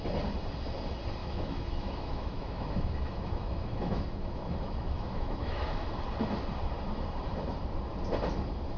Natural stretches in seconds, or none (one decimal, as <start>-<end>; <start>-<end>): 0.0-1.2; 5.9-8.8